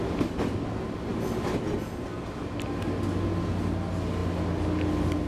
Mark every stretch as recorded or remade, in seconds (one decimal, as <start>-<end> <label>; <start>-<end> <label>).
0.0-5.3 recorded